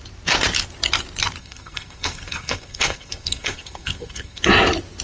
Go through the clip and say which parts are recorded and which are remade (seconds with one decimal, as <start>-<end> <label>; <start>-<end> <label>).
0.0-1.4 recorded; 1.4-4.4 remade; 4.4-5.0 recorded